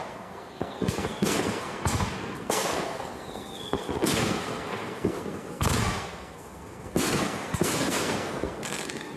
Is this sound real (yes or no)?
no